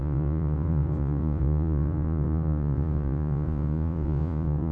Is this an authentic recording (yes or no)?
no